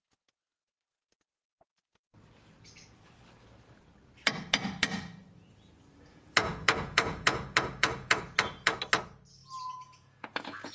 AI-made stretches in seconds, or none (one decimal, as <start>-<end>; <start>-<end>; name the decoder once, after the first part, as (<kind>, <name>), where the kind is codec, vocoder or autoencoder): 6.1-8.8 (vocoder, Vocos); 9.4-10.7